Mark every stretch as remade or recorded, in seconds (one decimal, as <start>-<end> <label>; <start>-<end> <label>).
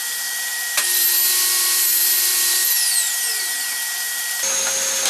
0.0-5.1 recorded